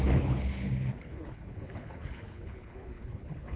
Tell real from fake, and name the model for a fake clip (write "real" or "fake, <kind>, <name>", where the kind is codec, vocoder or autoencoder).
fake, codec, HILCodec